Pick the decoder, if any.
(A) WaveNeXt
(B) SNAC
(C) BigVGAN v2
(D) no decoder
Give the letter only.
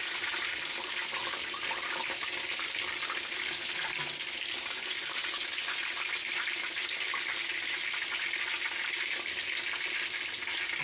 D